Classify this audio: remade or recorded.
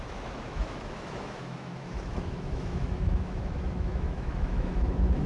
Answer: remade